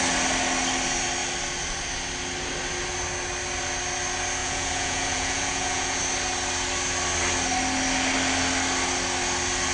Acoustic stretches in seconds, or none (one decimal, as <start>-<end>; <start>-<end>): 0.0-4.4; 6.0-9.7